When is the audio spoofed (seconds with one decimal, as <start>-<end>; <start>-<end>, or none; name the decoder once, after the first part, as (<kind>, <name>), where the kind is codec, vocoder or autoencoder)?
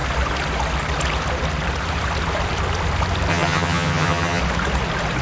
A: 3.3-4.4 (vocoder, HiFi-GAN)